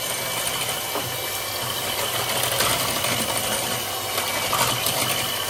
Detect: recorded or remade recorded